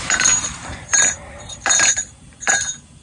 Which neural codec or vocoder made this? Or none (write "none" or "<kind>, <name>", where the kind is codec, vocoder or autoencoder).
vocoder, BigVGAN v2